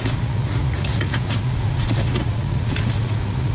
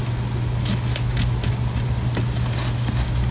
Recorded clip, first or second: second